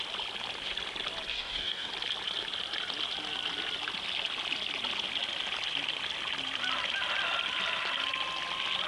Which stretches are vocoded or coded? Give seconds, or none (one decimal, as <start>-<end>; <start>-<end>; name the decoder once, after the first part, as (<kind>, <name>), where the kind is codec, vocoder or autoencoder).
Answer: 1.3-1.9 (codec, DAC)